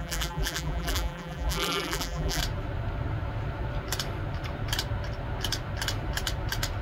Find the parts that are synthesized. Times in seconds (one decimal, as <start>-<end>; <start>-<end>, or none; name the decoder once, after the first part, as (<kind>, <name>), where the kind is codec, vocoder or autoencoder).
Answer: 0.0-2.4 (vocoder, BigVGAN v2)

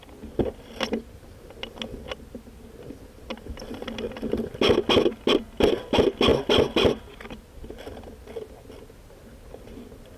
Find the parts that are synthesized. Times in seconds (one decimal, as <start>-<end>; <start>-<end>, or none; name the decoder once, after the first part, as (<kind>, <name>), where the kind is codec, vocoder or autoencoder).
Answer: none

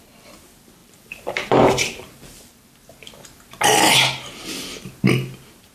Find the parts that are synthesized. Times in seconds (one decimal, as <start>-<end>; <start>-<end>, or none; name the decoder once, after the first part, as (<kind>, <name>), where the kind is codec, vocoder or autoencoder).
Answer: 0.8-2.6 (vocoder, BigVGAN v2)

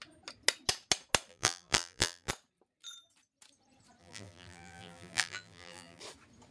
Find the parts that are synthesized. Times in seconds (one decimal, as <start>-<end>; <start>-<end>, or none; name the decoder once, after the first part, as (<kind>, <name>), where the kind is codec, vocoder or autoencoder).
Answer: 1.3-2.3 (vocoder, BigVGAN v2); 4.0-6.0

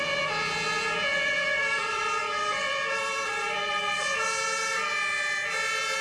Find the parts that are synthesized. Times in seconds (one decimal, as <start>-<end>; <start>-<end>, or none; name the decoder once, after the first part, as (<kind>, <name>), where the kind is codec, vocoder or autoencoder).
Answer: 1.1-2.7 (vocoder, BigVGAN v2)